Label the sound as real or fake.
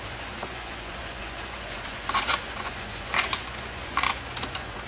fake